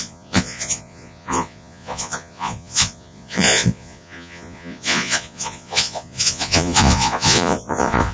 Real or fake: fake